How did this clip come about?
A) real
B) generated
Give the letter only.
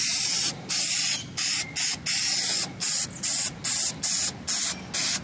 A